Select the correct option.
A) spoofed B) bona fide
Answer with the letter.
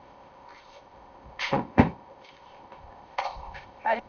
A